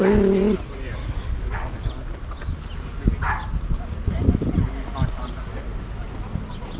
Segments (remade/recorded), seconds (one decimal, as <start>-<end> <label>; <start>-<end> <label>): 0.0-1.0 recorded; 1.0-1.8 remade; 1.8-6.8 recorded